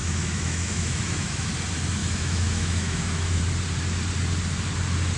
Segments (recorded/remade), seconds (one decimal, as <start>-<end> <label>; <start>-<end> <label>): 0.0-1.5 remade; 1.5-2.0 recorded; 2.0-3.4 remade; 3.4-5.2 recorded